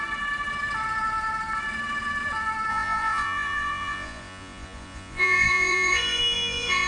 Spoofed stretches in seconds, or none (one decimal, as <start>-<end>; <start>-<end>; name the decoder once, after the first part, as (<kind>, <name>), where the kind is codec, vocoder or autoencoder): 2.7-6.9 (vocoder, Vocos)